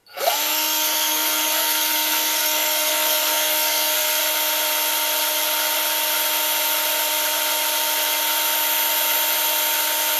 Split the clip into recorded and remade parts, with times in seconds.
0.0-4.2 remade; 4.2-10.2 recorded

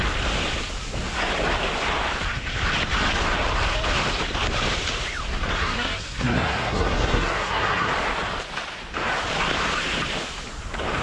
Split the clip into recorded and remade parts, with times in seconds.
0.0-5.5 recorded; 5.5-7.9 remade; 7.9-11.0 recorded

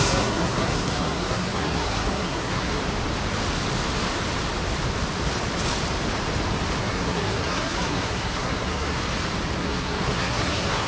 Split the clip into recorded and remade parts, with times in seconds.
0.0-2.8 remade; 2.8-6.8 recorded; 6.8-9.0 remade; 9.0-9.6 recorded; 9.6-10.9 remade

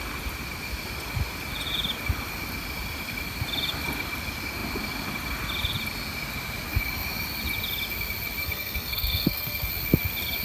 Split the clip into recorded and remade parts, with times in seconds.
0.0-8.4 recorded; 8.4-9.7 remade; 9.7-10.4 recorded

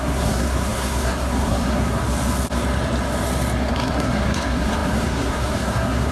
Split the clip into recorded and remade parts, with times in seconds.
0.0-2.0 remade; 2.0-3.7 recorded; 3.7-6.1 remade

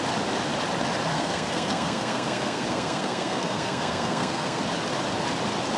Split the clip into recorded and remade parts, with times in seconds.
0.0-1.1 recorded; 1.1-4.6 remade; 4.6-5.8 recorded

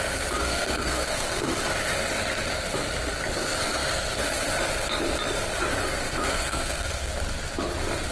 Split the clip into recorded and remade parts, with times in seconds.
0.0-0.4 recorded; 0.4-1.5 remade; 1.5-5.9 recorded; 5.9-7.1 remade; 7.1-8.1 recorded